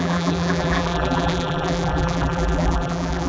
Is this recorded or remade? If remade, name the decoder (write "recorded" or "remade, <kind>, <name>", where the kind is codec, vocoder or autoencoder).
remade, vocoder, BigVGAN v2